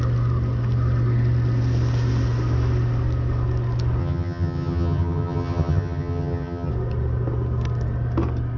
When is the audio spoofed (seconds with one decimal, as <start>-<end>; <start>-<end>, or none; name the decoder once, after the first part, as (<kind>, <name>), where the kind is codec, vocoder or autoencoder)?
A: 4.0-6.7 (vocoder, HiFi-GAN)